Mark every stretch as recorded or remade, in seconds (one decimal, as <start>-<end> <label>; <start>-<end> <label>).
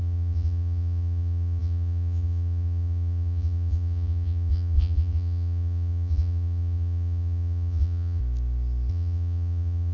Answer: 0.0-8.2 remade; 8.2-8.9 recorded; 8.9-9.9 remade